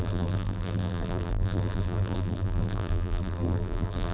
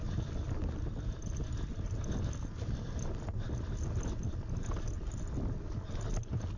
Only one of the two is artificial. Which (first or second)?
first